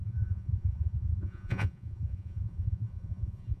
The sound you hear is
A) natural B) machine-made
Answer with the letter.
B